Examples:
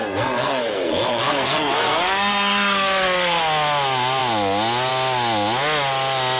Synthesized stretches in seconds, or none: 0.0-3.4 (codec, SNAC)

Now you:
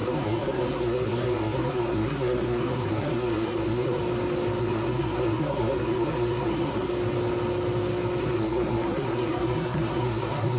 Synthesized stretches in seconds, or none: 0.0-4.0 (codec, SNAC); 4.6-6.9; 8.2-10.6

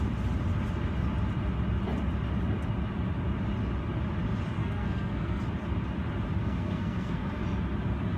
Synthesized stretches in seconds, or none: 4.6-5.4 (codec, SNAC); 6.4-7.4

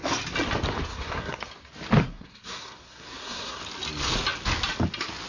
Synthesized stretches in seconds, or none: 0.9-1.4 (codec, SNAC); 2.0-3.6

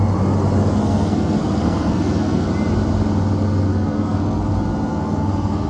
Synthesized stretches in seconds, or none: 0.8-2.5 (codec, SNAC); 3.7-4.5; 4.9-5.7

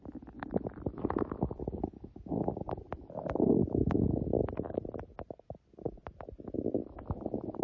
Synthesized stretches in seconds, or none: none

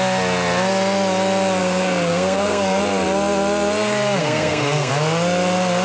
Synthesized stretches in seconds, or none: 1.6-2.8 (codec, SNAC); 4.2-4.9